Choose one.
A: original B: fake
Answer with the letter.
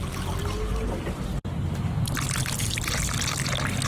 A